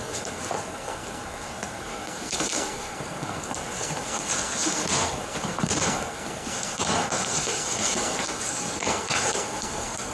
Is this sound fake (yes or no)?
yes